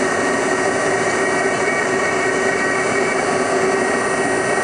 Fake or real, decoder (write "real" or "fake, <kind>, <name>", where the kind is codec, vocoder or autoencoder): real